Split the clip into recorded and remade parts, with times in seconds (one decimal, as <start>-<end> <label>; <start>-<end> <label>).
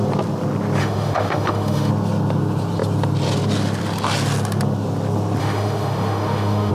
0.0-0.8 recorded; 0.8-1.9 remade; 1.9-5.4 recorded; 5.4-6.7 remade